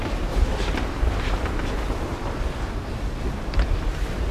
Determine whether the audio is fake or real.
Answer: real